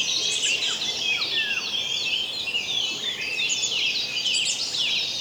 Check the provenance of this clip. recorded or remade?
recorded